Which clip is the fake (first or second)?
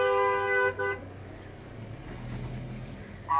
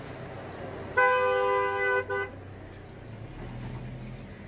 first